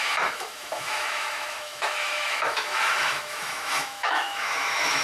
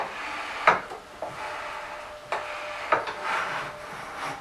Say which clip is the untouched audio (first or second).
second